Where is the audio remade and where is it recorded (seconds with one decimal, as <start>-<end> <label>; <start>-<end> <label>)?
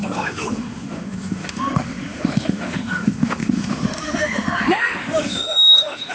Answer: 0.0-6.1 remade